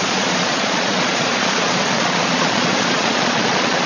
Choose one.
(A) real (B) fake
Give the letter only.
B